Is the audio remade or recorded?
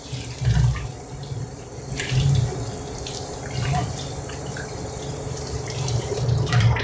remade